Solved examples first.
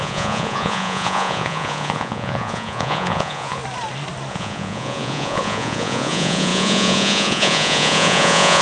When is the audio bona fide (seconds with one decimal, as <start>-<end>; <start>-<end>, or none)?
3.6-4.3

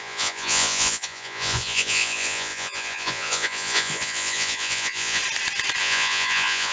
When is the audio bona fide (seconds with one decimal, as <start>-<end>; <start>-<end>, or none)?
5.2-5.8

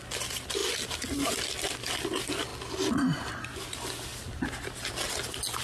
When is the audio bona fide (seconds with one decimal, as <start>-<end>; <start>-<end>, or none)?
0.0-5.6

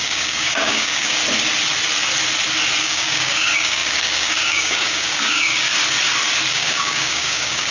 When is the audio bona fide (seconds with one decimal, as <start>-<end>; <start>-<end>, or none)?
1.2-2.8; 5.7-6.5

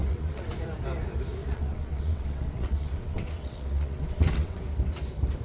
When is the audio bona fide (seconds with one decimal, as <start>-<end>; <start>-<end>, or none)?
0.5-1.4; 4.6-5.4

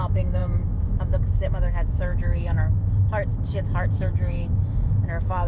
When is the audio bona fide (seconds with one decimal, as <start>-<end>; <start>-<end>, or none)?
none